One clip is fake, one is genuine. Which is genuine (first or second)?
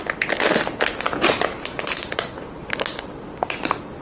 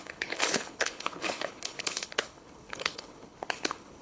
first